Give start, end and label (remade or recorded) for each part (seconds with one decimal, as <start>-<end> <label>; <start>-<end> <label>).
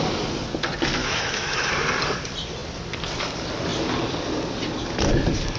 0.0-1.0 recorded; 1.0-1.7 remade; 1.7-5.6 recorded